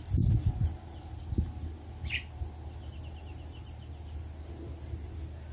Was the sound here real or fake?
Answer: real